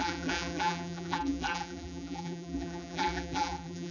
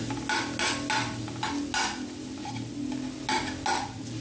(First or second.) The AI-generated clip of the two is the first